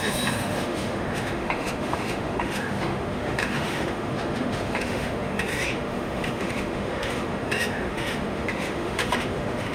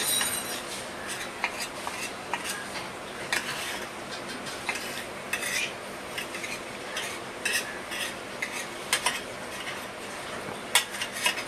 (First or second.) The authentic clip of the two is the second